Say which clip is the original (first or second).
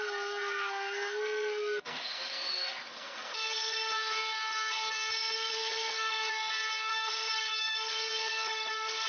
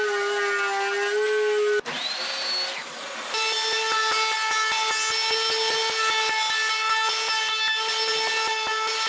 second